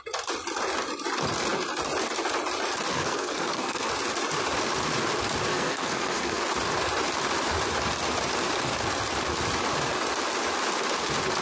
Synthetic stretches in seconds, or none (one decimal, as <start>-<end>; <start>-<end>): 2.9-3.9; 5.5-6.4